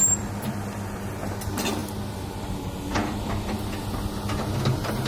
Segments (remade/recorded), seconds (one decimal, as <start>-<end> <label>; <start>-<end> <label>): 0.0-5.1 recorded